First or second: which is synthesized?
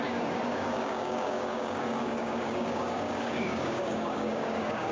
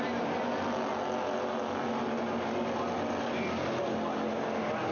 first